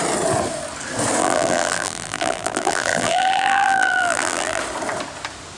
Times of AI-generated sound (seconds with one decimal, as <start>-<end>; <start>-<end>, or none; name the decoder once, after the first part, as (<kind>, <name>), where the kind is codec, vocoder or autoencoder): 1.2-4.6 (vocoder, BigVGAN v2)